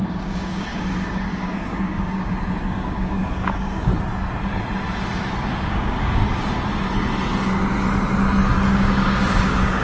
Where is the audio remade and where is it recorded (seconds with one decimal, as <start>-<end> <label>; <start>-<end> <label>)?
0.0-3.9 remade; 3.9-5.5 recorded; 5.5-6.2 remade; 6.2-8.7 recorded; 8.7-9.8 remade